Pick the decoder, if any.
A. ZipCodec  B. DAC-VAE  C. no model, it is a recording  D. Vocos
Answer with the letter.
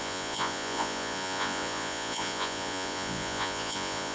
D